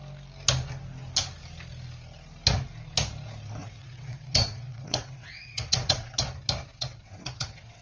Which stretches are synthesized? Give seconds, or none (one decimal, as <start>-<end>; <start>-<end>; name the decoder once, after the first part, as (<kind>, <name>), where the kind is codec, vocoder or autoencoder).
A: 3.6-6.2 (vocoder, WaveNeXt); 6.7-7.8